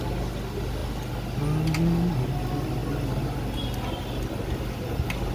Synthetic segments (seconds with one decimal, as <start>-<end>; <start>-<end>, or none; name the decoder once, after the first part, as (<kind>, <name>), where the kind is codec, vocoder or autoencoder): none